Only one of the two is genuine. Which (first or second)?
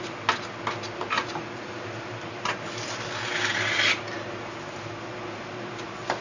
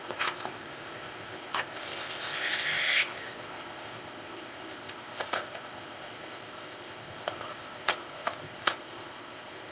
first